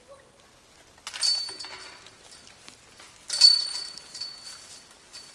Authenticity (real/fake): real